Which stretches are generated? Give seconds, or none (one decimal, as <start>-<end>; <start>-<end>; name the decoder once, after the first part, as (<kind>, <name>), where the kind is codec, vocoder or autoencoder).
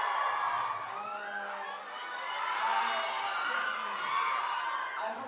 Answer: none